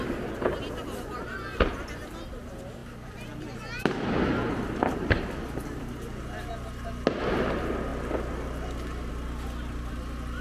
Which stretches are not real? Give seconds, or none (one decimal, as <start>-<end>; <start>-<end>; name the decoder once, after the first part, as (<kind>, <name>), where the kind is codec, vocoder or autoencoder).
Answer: none